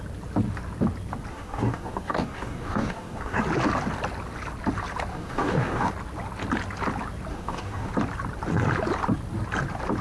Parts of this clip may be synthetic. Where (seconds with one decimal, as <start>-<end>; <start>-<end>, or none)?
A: 1.3-3.4; 5.1-5.9; 7.3-7.9